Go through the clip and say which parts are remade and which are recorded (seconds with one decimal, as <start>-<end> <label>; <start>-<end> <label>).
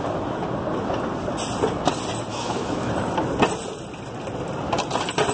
0.0-2.3 recorded; 2.3-2.9 remade; 2.9-5.3 recorded